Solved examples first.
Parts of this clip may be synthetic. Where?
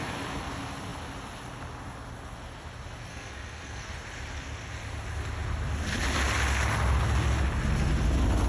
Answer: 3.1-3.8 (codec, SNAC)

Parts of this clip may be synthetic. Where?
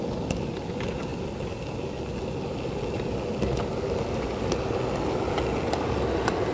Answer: none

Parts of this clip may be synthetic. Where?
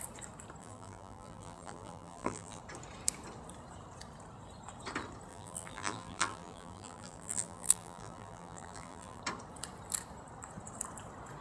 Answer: 0.6-2.6 (vocoder, BigVGAN v2); 5.3-9.2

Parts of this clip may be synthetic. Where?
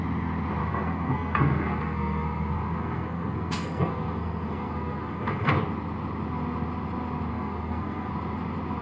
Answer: 0.6-5.5 (codec, SNAC); 7.3-8.1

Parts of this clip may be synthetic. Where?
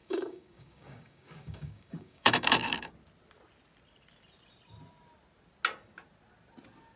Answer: 0.0-2.9 (codec, DAC)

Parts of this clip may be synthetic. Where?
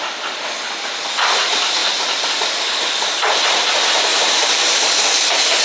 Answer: 1.8-2.4 (vocoder, BigVGAN v2); 4.1-5.6